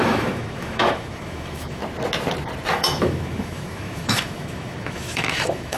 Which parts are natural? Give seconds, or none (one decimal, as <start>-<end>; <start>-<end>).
1.8-2.7